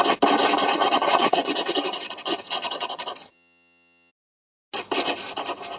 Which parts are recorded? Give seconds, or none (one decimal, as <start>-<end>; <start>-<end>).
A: 0.0-0.6; 4.1-5.8